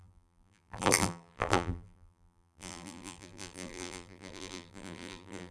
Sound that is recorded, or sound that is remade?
remade